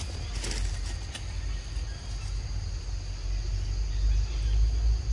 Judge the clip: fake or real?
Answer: real